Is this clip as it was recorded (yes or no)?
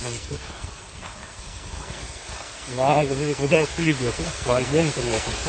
no